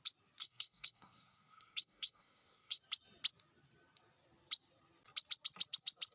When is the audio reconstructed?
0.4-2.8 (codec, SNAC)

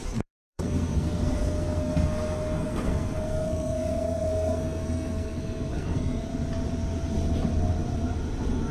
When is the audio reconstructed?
0.0-6.3 (codec, SNAC)

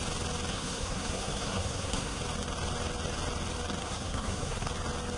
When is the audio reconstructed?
0.5-2.2 (codec, SNAC); 3.8-4.7

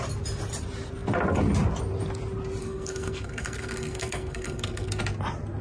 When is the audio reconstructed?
2.6-5.0 (codec, SNAC)

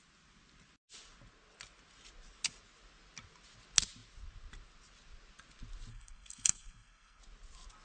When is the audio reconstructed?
5.9-7.2 (codec, SNAC)